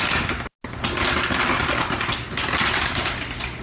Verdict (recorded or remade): recorded